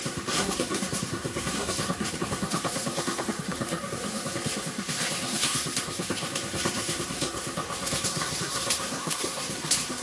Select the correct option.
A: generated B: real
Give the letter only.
A